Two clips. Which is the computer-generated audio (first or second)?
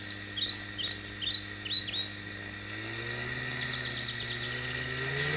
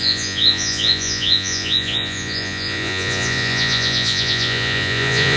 second